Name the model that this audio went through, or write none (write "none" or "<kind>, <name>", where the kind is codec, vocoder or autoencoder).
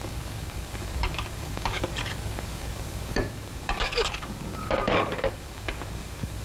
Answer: codec, DAC